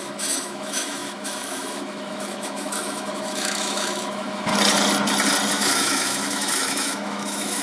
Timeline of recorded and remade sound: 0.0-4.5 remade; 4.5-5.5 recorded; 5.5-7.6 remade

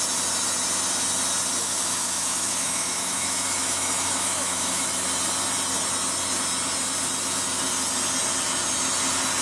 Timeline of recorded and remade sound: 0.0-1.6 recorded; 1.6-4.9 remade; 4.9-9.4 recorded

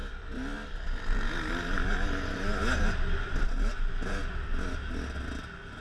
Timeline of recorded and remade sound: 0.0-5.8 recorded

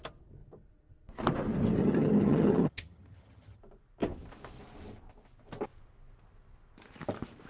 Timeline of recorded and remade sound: 0.0-1.8 recorded; 1.8-3.6 remade; 3.6-7.5 recorded

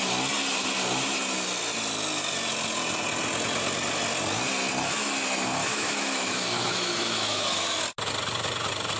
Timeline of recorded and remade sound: 0.0-5.7 recorded; 5.7-7.8 remade; 7.8-9.0 recorded

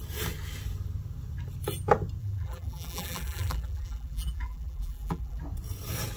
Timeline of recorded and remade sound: 0.0-2.2 recorded; 2.2-5.4 remade; 5.4-6.2 recorded

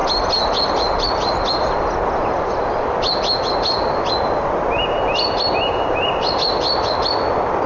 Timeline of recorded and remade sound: 0.0-7.7 recorded

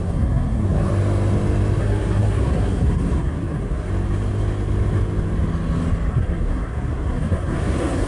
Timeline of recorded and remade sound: 0.0-0.9 remade; 0.9-1.8 recorded; 1.8-3.9 remade; 3.9-6.1 recorded; 6.1-8.1 remade